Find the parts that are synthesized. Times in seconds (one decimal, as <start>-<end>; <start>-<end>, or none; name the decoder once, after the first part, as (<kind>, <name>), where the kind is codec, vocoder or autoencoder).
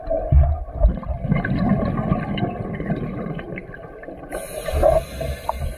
none